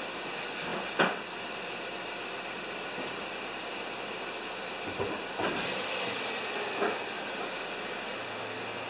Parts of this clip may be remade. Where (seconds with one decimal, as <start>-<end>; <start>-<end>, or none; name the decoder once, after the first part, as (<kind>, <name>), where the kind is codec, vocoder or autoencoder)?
none